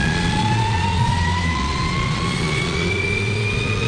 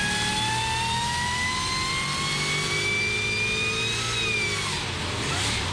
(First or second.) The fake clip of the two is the first